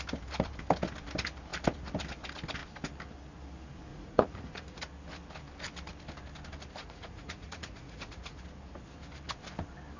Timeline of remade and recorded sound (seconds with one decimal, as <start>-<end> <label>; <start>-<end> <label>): 0.0-3.9 recorded; 3.9-4.8 remade; 4.8-6.8 recorded; 6.8-8.4 remade; 8.4-10.0 recorded